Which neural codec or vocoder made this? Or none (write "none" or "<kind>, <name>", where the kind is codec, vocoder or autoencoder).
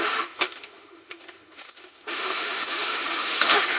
autoencoder, DAC-VAE